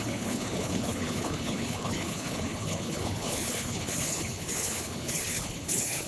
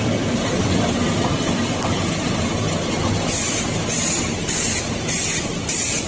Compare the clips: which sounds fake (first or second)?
first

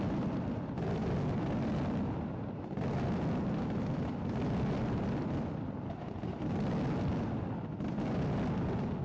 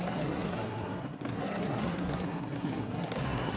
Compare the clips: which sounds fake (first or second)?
second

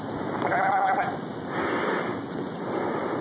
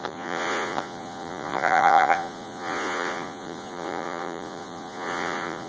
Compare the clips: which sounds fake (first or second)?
second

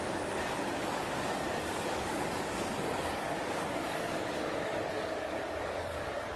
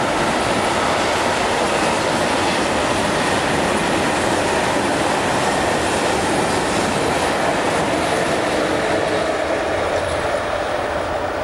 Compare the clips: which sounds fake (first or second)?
first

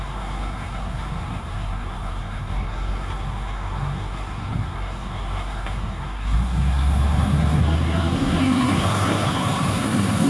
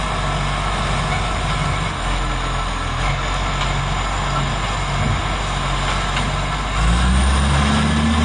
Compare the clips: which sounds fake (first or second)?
first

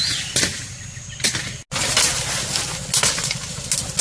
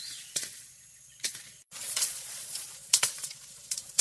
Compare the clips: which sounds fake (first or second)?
second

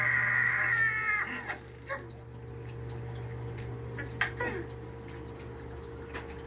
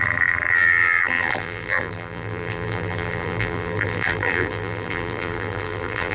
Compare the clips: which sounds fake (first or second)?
second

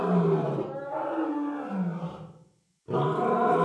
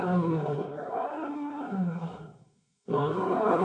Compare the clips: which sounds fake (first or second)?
second